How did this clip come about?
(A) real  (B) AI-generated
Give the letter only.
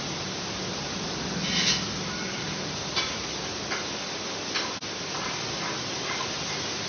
A